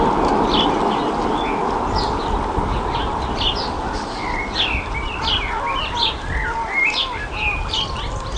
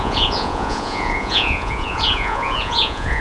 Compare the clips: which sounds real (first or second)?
first